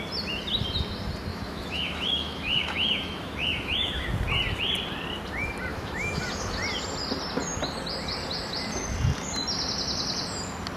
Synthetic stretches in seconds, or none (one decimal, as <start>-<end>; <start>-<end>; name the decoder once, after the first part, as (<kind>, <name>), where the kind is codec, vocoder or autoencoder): 1.3-4.1 (autoencoder, DAC-VAE); 5.7-6.2